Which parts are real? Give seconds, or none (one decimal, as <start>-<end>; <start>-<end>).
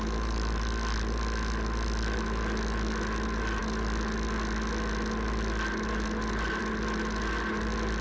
0.0-8.0